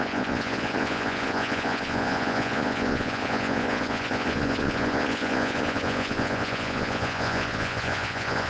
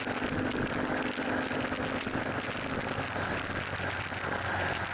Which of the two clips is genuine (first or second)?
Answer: second